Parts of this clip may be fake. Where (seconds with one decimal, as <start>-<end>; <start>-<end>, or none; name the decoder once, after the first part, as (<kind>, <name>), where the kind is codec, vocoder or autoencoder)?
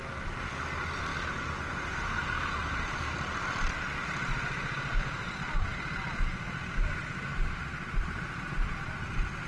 1.1-3.8 (vocoder, BigVGAN v2); 7.0-7.6